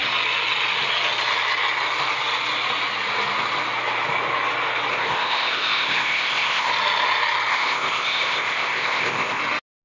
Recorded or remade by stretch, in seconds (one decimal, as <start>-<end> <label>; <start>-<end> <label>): 0.0-4.9 recorded; 4.9-6.7 remade; 6.7-7.5 recorded; 7.5-9.4 remade; 9.4-9.8 recorded